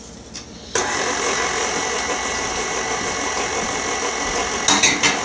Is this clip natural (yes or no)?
yes